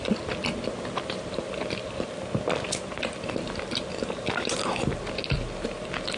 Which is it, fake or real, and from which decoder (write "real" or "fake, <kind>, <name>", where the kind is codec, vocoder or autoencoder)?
real